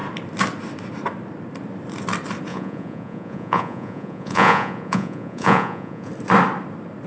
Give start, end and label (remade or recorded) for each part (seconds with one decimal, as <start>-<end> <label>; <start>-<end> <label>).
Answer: 0.0-2.5 recorded; 2.5-6.1 remade; 6.1-7.1 recorded